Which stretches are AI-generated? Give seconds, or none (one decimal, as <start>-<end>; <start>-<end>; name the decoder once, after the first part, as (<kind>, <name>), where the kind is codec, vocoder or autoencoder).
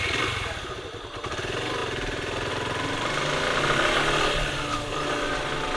none